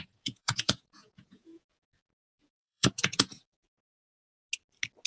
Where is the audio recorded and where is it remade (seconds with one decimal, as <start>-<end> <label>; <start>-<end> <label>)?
0.0-4.2 remade; 4.2-5.1 recorded